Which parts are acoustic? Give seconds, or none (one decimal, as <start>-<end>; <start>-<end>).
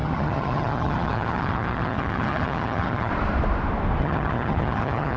3.1-4.0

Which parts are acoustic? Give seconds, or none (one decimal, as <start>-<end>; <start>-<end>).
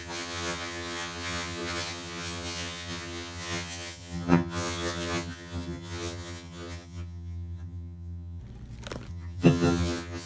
8.4-9.1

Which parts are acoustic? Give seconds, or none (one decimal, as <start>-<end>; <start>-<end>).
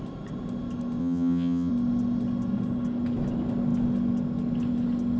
0.0-1.0; 1.7-5.2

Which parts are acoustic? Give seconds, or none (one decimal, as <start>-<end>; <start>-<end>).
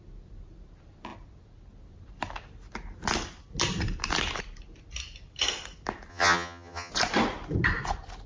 0.0-6.1; 6.9-8.3